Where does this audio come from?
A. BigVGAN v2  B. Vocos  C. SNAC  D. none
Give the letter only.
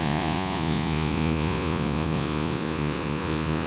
B